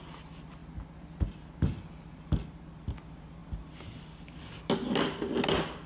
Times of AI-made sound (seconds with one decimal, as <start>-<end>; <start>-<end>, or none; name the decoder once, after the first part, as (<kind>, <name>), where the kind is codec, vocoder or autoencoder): none